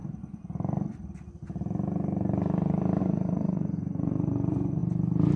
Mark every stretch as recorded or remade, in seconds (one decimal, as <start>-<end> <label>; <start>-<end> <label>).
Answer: 0.0-3.0 recorded; 3.0-4.8 remade; 4.8-5.4 recorded